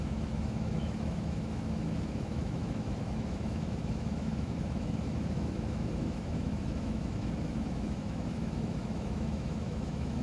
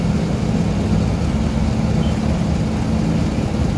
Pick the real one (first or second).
second